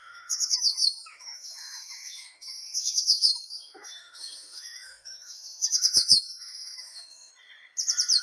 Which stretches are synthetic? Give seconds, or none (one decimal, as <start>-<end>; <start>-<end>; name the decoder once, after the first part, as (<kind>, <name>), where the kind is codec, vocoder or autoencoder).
0.0-7.3 (autoencoder, DAC-VAE)